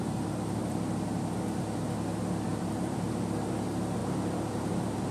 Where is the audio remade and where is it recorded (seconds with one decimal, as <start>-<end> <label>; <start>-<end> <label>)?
0.0-0.8 remade; 0.8-2.5 recorded; 2.5-3.1 remade; 3.1-4.0 recorded; 4.0-5.1 remade